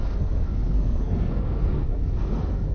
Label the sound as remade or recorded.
remade